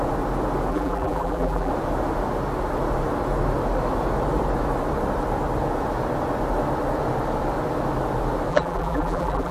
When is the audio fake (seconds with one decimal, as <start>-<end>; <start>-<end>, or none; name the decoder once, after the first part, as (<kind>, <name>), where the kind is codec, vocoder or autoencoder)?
0.7-1.7 (vocoder, BigVGAN v2); 8.5-9.5